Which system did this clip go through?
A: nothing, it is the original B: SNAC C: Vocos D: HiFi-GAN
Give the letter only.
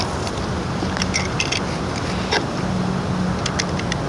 A